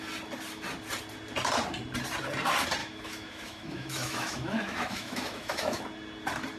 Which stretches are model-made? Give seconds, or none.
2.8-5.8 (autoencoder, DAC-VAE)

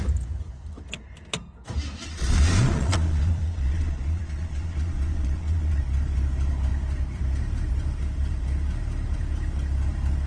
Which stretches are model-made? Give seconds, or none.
2.0-5.8 (vocoder, Vocos)

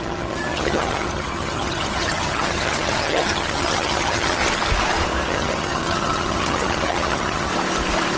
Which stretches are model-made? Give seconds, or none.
0.0-4.4 (vocoder, HiFi-GAN); 5.3-7.5

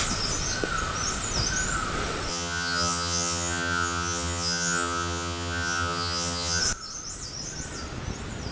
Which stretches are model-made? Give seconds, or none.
2.3-6.6 (vocoder, HiFi-GAN)

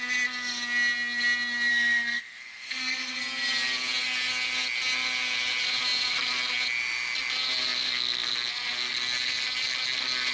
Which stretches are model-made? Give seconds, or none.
1.7-3.2 (codec, SNAC)

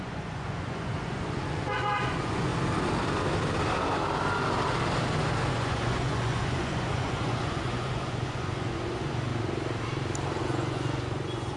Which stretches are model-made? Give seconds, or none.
0.0-2.5 (vocoder, Vocos); 5.5-9.3; 10.4-11.6

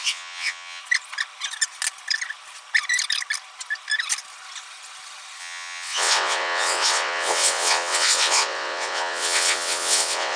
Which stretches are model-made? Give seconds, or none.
0.0-0.8 (vocoder, WaveNeXt); 5.4-10.4

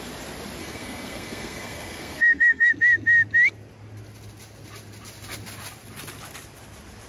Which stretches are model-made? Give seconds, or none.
0.6-2.7 (codec, SNAC)